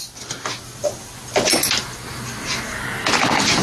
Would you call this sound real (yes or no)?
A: yes